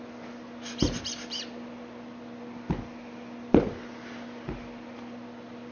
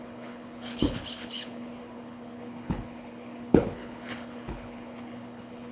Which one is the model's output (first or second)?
second